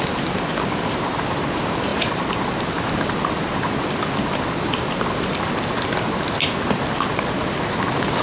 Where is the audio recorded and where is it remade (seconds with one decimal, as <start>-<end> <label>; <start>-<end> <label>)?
0.0-8.2 recorded